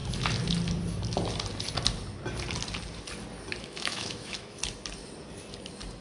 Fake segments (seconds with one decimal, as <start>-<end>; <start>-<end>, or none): 3.6-4.6